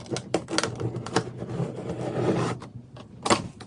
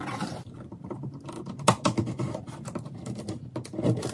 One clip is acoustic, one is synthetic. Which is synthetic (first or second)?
second